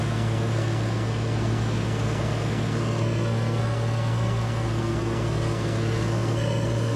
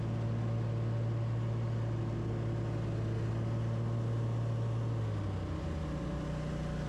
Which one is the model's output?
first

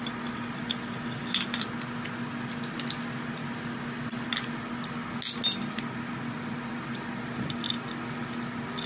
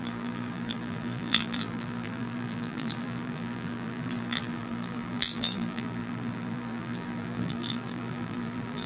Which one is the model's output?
second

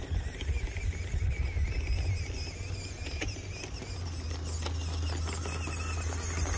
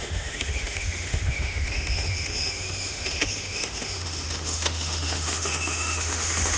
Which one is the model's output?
second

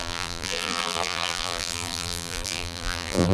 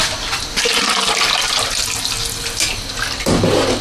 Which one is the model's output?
first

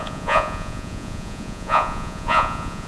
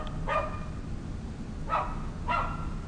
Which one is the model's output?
first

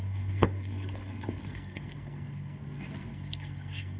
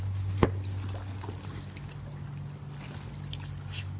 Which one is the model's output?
first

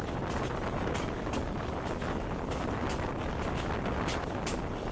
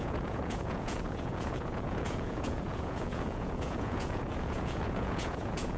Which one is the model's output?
second